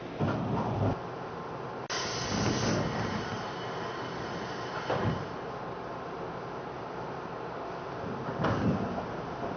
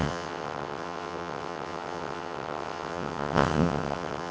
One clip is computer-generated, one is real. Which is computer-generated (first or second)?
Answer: second